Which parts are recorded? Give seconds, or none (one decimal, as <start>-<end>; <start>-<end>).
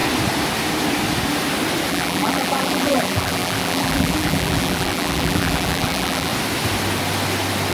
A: 0.0-1.9; 6.3-7.7